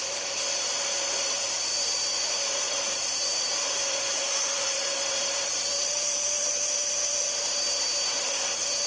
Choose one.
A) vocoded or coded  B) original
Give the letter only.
A